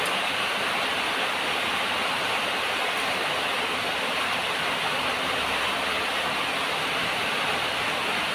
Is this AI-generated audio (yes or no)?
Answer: no